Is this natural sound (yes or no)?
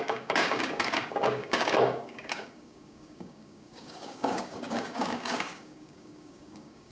no